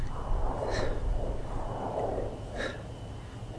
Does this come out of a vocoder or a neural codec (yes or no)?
no